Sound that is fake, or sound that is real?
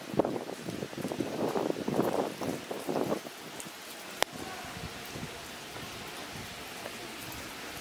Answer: real